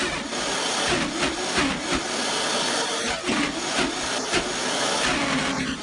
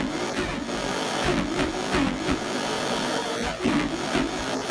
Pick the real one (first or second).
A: first